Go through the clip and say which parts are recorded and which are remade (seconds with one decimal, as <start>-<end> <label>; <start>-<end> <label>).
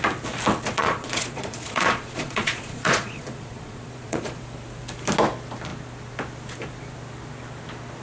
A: 0.0-0.8 recorded; 0.8-4.4 remade; 4.4-8.0 recorded